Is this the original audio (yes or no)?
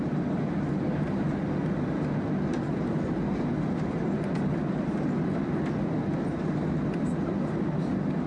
yes